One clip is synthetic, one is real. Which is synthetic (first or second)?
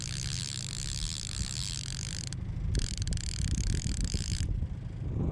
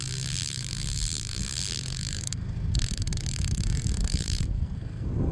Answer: second